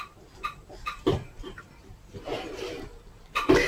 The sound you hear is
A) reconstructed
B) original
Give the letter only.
A